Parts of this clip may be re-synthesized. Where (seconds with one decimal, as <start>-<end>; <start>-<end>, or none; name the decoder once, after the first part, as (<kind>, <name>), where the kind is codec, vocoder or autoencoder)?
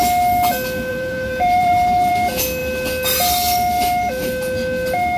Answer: 0.9-2.1 (vocoder, BigVGAN v2)